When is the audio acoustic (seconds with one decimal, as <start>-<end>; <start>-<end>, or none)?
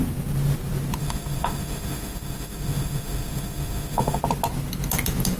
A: 0.0-1.0; 4.2-5.4